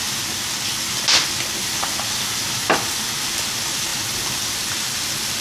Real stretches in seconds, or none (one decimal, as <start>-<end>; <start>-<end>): 0.0-5.4